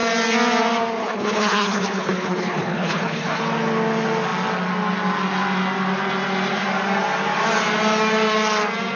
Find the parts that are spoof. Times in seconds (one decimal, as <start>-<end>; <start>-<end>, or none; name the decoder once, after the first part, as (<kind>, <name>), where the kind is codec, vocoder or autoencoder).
1.0-3.4 (codec, HILCodec)